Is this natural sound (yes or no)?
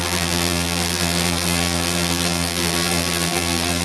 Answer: no